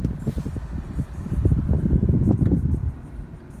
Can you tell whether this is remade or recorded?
remade